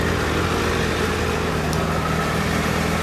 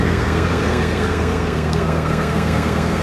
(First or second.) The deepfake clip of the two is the second